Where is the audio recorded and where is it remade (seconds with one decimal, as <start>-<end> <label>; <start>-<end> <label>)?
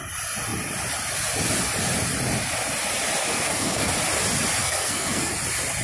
0.0-3.3 recorded; 3.3-3.9 remade; 3.9-4.6 recorded; 4.6-5.3 remade; 5.3-5.8 recorded